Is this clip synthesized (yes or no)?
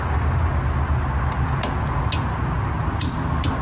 no